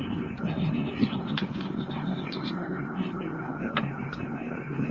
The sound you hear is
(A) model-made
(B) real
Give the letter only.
A